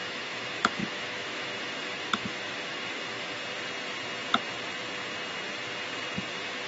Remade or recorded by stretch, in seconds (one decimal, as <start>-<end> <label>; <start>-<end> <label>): 0.0-3.4 remade; 3.4-6.3 recorded; 6.3-6.7 remade

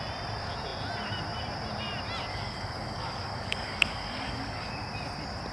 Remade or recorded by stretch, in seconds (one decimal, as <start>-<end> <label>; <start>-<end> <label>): 0.0-2.3 recorded; 2.3-4.7 remade; 4.7-5.5 recorded

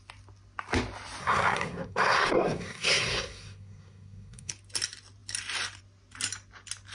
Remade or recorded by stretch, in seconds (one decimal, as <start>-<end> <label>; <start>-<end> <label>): 0.0-1.2 recorded; 1.2-4.5 remade; 4.5-6.9 recorded